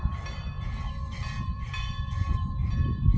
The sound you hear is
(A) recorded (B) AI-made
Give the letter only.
A